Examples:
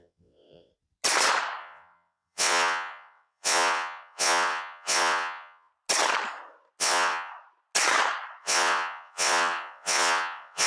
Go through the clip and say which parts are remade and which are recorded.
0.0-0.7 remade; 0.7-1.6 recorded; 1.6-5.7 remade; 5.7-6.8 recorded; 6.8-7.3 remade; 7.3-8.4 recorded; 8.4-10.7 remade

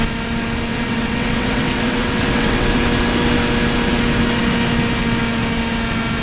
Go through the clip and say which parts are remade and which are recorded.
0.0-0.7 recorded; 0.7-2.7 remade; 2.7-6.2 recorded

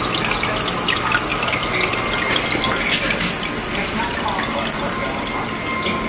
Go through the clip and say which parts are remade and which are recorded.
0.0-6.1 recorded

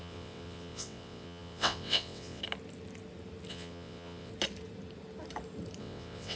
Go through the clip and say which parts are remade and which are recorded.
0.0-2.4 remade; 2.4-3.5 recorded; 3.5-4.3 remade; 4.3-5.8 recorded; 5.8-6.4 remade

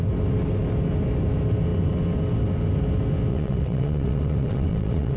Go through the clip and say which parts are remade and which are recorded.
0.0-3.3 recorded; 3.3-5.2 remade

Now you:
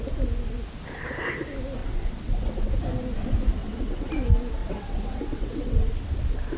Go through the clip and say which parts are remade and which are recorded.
0.0-1.8 recorded; 1.8-2.7 remade; 2.7-3.6 recorded; 3.6-4.1 remade; 4.1-4.6 recorded; 4.6-5.9 remade; 5.9-6.6 recorded

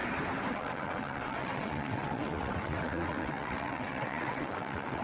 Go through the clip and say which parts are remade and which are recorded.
0.0-0.5 recorded; 0.5-5.0 remade